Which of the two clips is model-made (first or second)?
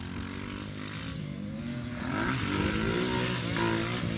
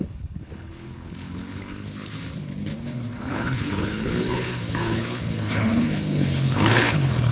second